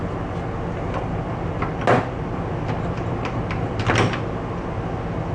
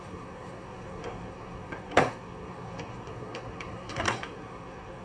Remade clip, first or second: second